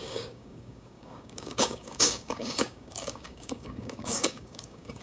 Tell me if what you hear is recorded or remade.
remade